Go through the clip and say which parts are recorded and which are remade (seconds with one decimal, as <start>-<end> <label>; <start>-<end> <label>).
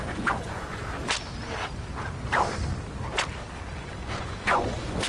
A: 0.0-0.8 remade; 0.8-3.7 recorded; 3.7-5.1 remade